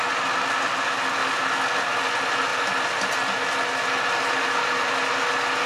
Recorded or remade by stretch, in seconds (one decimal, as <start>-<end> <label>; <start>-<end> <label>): 0.0-5.7 recorded